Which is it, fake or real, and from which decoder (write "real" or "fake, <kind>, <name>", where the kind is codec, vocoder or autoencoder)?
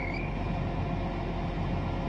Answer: real